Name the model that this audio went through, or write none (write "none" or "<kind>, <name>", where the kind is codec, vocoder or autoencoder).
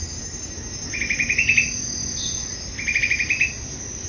none